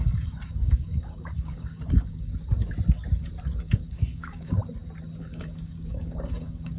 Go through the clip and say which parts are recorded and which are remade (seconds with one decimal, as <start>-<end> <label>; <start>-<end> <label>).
0.0-2.3 remade; 2.3-3.6 recorded; 3.6-4.6 remade; 4.6-5.2 recorded; 5.2-6.8 remade